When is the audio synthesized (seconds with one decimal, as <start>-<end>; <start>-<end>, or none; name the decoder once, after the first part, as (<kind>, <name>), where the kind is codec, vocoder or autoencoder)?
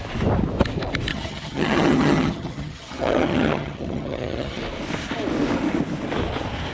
1.1-4.6 (vocoder, HiFi-GAN)